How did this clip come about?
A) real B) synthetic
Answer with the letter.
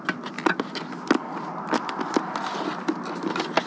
A